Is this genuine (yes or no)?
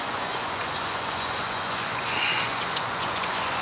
no